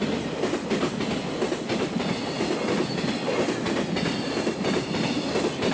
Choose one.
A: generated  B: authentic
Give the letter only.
B